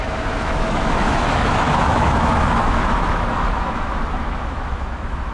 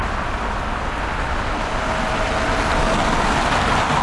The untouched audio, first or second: second